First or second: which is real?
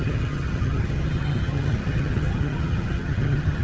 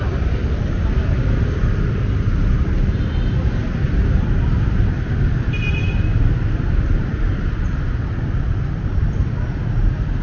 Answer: second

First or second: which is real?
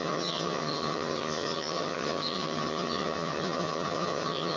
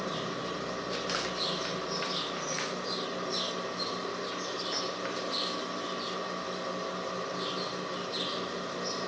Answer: second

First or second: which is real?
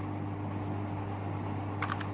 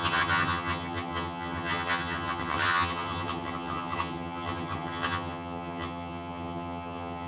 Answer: first